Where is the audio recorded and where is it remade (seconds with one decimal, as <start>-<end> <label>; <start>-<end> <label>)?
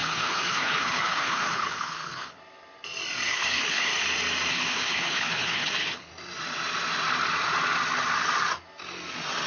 0.0-2.4 remade; 2.4-3.3 recorded; 3.3-3.9 remade; 3.9-4.5 recorded; 4.5-6.1 remade; 6.1-9.5 recorded